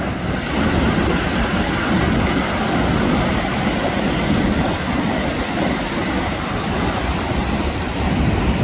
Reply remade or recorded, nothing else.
recorded